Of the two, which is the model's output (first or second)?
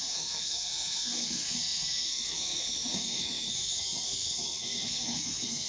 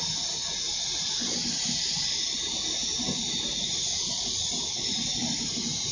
first